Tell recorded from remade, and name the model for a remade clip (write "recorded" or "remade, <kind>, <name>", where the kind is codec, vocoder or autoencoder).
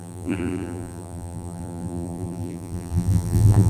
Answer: remade, vocoder, BigVGAN v2